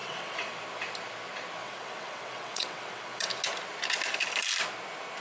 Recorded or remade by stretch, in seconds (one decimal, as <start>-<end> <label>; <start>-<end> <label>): 0.0-0.6 remade; 0.6-1.6 recorded; 1.6-3.3 remade; 3.3-5.2 recorded